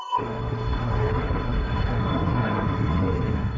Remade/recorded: remade